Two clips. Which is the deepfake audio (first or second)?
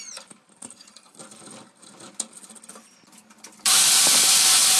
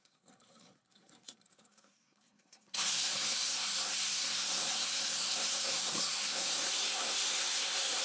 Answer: second